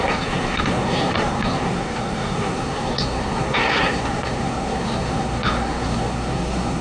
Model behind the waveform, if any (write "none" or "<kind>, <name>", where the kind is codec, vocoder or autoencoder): codec, SNAC